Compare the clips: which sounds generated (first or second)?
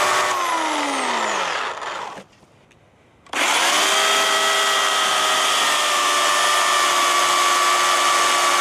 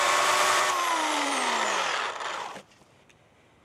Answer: second